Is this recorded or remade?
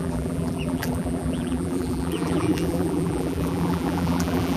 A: remade